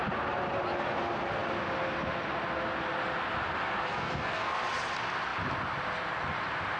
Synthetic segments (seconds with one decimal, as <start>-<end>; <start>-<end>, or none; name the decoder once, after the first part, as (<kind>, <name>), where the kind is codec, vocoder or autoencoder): 3.9-4.6 (codec, SNAC)